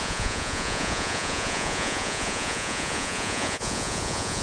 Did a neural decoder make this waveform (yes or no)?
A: yes